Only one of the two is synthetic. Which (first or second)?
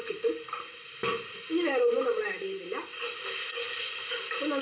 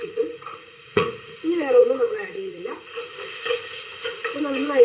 second